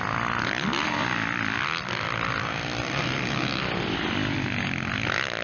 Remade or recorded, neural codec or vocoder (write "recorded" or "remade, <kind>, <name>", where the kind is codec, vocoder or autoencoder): recorded